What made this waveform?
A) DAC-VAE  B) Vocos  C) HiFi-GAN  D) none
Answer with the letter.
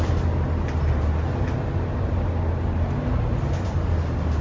D